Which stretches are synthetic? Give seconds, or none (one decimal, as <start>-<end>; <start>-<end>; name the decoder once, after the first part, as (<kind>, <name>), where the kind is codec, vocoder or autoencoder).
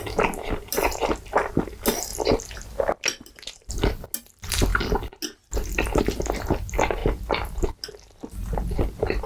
none